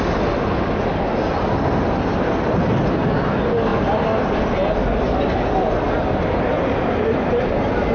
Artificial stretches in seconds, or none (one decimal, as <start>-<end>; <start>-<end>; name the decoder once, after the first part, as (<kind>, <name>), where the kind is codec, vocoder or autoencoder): none